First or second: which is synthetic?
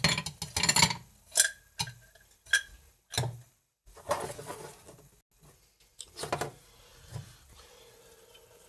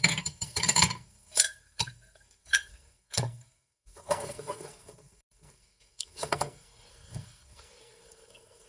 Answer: second